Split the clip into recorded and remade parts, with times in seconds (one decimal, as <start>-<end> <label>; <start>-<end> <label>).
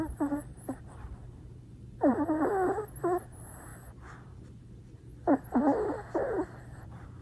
0.0-2.5 remade; 2.5-3.2 recorded; 3.2-3.7 remade; 3.7-7.2 recorded